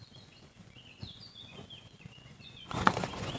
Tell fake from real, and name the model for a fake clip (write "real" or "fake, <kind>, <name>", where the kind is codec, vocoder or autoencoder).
fake, vocoder, Vocos